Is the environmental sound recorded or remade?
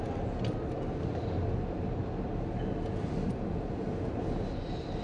recorded